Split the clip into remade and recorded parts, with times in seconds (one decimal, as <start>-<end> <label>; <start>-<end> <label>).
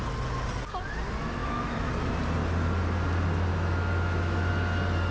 0.0-1.4 recorded; 1.4-1.9 remade; 1.9-3.5 recorded; 3.5-4.5 remade; 4.5-5.1 recorded